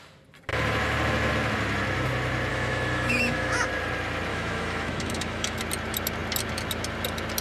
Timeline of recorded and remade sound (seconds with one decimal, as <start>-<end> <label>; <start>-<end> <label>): 0.0-2.5 recorded; 2.5-3.7 remade; 3.7-4.3 recorded; 4.3-5.6 remade; 5.6-7.4 recorded